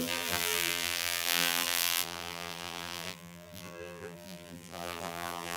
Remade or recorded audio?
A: remade